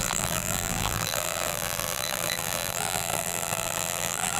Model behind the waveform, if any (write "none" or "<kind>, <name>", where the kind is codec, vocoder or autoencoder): vocoder, BigVGAN v2